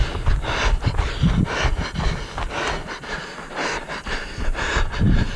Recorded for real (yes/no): yes